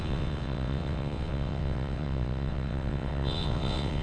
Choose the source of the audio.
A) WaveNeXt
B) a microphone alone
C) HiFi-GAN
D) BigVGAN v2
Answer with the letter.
A